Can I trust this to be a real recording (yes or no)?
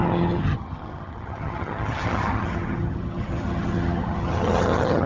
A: no